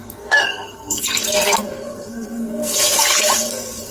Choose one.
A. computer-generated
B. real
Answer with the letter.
A